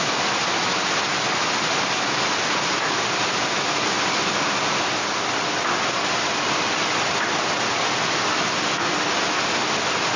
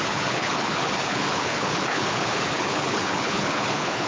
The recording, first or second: first